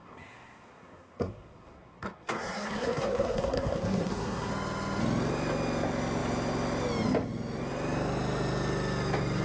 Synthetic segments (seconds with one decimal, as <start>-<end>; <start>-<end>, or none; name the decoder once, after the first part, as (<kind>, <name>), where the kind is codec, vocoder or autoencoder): 0.0-4.5 (codec, SNAC)